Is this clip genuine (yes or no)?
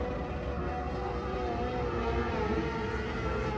yes